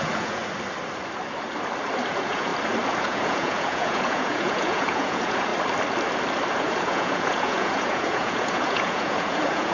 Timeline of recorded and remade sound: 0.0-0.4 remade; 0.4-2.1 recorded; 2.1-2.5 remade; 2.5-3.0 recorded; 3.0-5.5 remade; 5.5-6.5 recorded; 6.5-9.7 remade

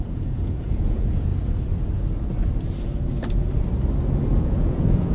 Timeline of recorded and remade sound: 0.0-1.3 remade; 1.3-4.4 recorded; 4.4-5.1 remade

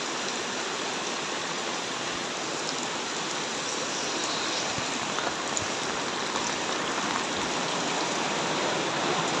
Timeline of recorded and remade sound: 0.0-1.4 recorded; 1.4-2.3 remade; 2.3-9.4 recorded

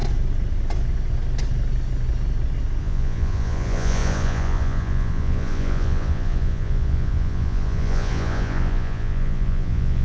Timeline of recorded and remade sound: 0.0-2.8 recorded; 2.8-10.0 remade